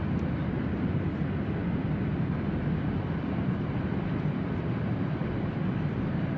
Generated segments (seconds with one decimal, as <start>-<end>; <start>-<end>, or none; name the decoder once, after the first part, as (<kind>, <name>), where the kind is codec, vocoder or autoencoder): none